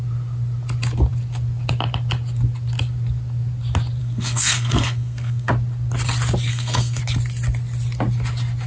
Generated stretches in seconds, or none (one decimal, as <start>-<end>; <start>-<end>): 4.0-5.5; 6.5-7.0